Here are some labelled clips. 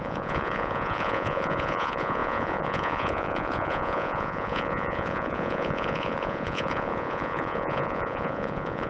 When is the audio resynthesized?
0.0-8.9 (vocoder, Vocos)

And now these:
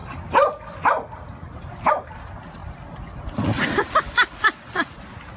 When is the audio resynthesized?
none

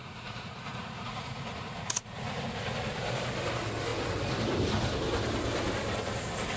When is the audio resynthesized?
0.0-2.4 (vocoder, Vocos)

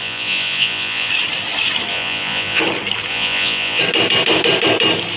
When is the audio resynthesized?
0.0-1.1 (vocoder, Vocos); 1.9-2.6; 3.1-3.8

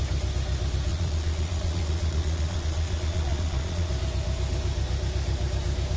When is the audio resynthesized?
0.9-3.9 (vocoder, Vocos)

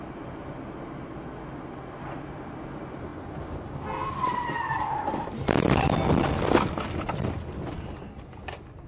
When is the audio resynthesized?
none

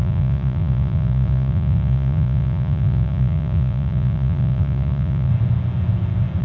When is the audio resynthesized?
0.0-5.3 (vocoder, Vocos)